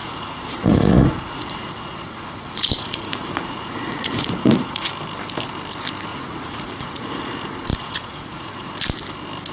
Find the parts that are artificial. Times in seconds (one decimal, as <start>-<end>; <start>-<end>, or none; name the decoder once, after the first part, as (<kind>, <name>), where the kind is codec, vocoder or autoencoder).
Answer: 0.0-4.9 (vocoder, Vocos); 6.1-7.3; 7.7-8.7

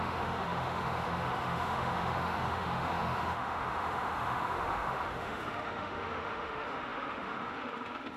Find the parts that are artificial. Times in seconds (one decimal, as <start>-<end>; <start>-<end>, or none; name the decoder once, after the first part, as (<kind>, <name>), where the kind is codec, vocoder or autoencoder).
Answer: 0.0-8.2 (autoencoder, DAC-VAE)